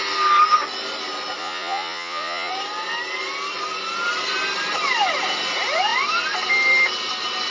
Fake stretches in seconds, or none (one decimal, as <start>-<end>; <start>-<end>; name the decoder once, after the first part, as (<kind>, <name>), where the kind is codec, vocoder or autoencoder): 1.4-2.5 (vocoder, Vocos)